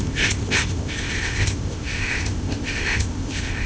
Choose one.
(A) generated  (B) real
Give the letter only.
A